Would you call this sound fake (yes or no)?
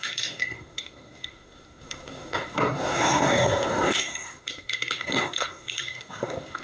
yes